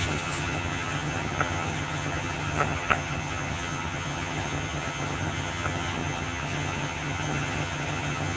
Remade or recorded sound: remade